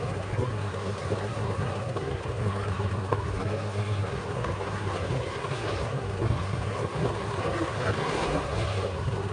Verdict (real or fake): fake